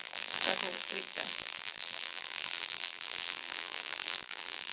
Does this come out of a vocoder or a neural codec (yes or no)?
yes